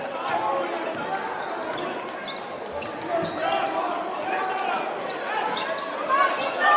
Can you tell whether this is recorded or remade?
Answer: recorded